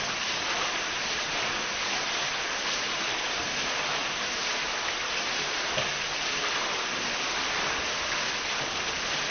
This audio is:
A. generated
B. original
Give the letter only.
B